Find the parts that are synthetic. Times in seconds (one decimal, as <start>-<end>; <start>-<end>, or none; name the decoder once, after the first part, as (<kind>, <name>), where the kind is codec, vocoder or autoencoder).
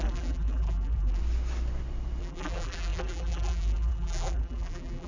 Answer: 0.0-1.2 (vocoder, BigVGAN v2); 2.2-5.1